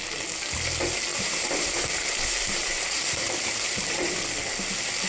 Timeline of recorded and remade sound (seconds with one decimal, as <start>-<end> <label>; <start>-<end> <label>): 0.0-1.1 recorded; 1.1-4.2 remade; 4.2-5.1 recorded